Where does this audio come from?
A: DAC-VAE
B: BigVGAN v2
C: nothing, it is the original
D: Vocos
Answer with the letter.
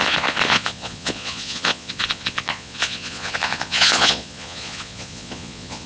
D